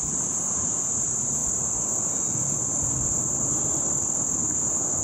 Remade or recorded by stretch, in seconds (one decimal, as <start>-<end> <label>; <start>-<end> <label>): 0.0-5.0 recorded